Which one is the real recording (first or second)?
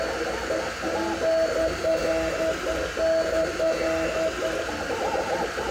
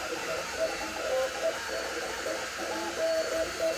first